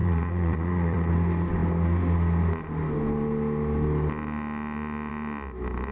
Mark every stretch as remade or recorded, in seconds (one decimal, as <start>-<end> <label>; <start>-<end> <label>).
0.0-1.1 remade; 1.1-5.9 recorded